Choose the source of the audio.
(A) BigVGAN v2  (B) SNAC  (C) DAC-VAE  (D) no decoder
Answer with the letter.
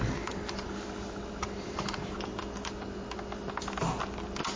D